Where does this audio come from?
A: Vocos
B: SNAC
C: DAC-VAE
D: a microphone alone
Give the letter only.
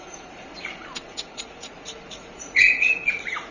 A